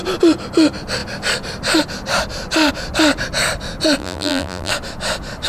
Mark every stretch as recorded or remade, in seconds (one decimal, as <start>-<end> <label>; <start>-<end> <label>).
0.0-4.0 recorded; 4.0-4.7 remade; 4.7-5.5 recorded

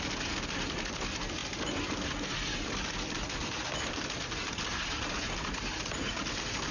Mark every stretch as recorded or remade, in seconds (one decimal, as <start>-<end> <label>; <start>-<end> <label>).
0.0-6.7 recorded

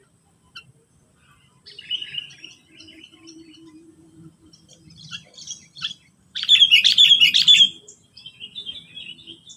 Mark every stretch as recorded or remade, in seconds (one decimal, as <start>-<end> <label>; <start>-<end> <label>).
0.0-3.9 recorded; 3.9-8.6 remade; 8.6-9.6 recorded

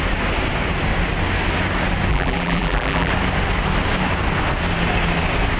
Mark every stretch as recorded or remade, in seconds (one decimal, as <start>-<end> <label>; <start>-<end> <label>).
0.0-2.1 recorded; 2.1-3.1 remade; 3.1-5.6 recorded

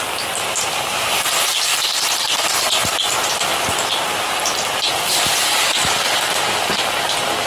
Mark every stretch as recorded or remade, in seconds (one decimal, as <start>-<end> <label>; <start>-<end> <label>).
0.0-7.5 recorded

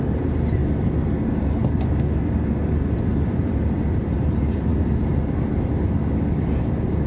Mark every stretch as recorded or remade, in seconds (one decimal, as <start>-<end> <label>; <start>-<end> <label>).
0.0-0.6 remade; 0.6-1.2 recorded; 1.2-1.6 remade; 1.6-2.2 recorded; 2.2-4.7 remade; 4.7-6.3 recorded; 6.3-7.1 remade

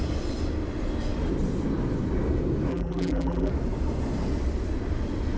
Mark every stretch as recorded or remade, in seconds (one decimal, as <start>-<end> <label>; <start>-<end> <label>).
0.0-2.7 recorded; 2.7-3.5 remade; 3.5-5.4 recorded

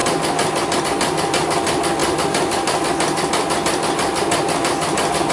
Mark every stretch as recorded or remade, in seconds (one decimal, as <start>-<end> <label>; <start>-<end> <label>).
0.0-5.3 recorded